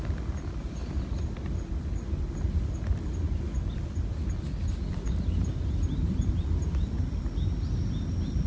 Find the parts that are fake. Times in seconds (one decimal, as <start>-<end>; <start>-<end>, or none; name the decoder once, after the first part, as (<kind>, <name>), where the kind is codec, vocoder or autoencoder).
none